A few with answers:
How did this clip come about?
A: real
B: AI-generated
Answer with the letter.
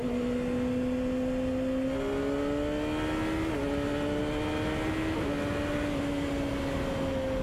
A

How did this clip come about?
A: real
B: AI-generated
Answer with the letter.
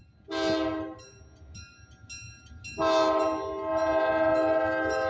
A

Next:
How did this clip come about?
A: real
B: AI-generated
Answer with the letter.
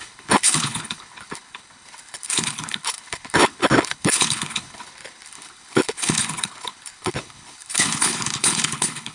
B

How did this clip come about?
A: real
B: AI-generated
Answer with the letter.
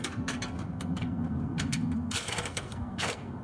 B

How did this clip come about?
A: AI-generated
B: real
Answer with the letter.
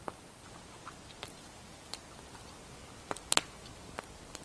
B